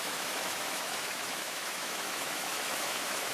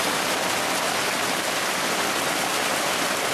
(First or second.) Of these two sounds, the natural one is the second